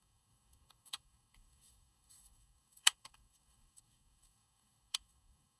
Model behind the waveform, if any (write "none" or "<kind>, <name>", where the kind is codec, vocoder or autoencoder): codec, DAC